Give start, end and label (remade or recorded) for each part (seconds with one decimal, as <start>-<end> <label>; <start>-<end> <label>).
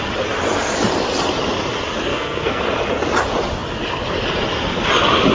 0.0-2.1 recorded; 2.1-2.6 remade; 2.6-5.3 recorded